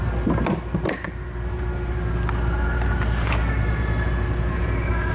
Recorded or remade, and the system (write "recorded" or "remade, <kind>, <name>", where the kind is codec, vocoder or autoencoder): recorded